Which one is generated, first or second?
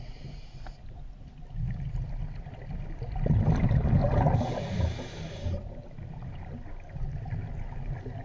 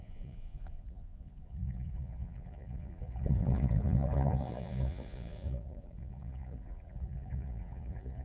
second